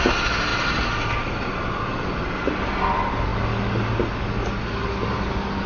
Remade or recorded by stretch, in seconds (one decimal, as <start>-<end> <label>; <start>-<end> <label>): 0.0-5.7 recorded